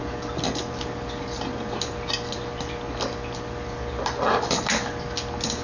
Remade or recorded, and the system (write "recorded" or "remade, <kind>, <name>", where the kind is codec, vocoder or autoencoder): recorded